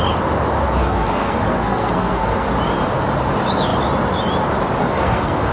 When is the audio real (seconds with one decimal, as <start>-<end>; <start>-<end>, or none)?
0.0-0.8; 2.5-4.8